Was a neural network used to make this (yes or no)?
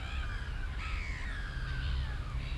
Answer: no